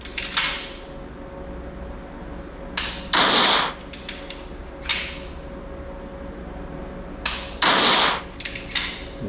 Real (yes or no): yes